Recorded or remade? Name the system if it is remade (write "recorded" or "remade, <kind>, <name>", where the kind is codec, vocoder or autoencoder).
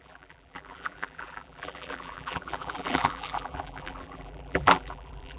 remade, vocoder, BigVGAN v2